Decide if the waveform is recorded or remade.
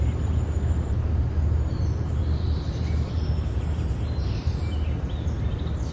recorded